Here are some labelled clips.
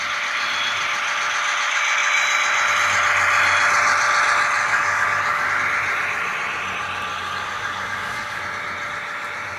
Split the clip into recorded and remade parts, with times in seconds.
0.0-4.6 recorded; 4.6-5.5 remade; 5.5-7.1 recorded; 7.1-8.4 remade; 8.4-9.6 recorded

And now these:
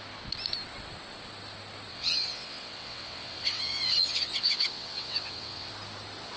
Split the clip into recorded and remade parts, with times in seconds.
0.0-1.9 recorded; 1.9-5.7 remade; 5.7-6.4 recorded

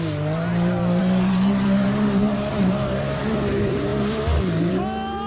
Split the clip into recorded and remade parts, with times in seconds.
0.0-1.0 recorded; 1.0-3.2 remade; 3.2-5.3 recorded

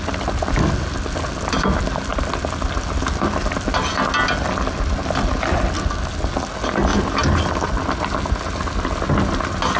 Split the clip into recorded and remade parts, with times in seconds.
0.0-6.9 recorded; 6.9-7.4 remade; 7.4-9.8 recorded

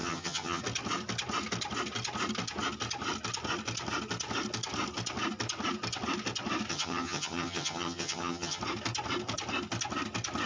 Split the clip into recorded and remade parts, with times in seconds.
0.0-0.6 remade; 0.6-6.7 recorded; 6.7-8.6 remade; 8.6-10.5 recorded

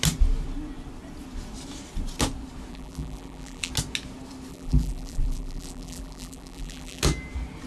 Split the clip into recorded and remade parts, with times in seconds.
0.0-2.7 recorded; 2.7-3.7 remade; 3.7-4.5 recorded; 4.5-7.0 remade; 7.0-7.7 recorded

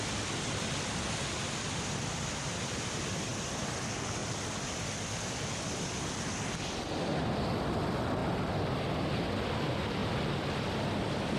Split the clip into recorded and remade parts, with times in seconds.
0.0-11.4 recorded